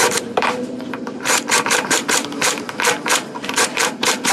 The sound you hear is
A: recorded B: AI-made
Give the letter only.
B